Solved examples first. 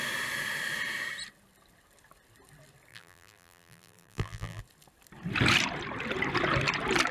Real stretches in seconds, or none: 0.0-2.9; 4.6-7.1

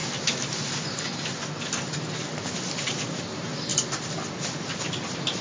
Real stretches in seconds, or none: 0.0-5.4

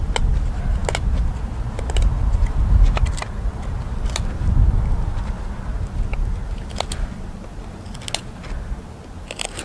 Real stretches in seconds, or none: 0.0-9.6

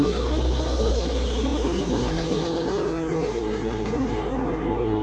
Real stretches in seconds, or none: none

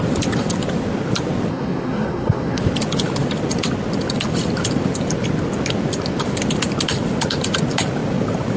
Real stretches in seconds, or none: 0.0-1.5; 2.6-8.6